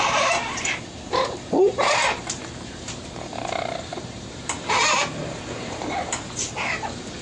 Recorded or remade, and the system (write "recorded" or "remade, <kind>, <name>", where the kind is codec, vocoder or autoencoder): remade, vocoder, BigVGAN v2